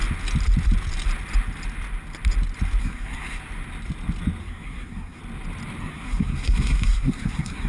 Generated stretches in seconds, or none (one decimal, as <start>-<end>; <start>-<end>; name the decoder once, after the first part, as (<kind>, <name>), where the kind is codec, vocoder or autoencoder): 2.8-3.4 (codec, SNAC); 4.4-5.2; 5.8-7.7